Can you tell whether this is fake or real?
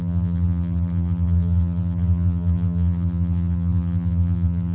fake